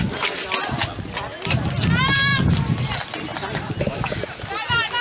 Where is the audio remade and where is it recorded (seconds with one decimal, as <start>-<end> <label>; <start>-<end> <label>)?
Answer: 0.0-5.0 recorded